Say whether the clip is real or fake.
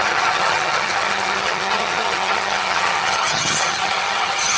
fake